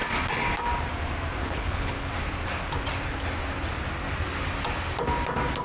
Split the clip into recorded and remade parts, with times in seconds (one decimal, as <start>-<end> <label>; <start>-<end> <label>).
0.0-1.4 recorded; 1.4-2.1 remade; 2.1-5.6 recorded